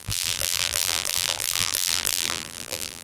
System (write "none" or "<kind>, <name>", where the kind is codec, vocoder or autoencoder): vocoder, BigVGAN v2